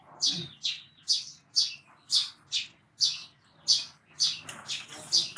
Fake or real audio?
real